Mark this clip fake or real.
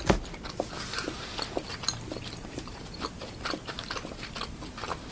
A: real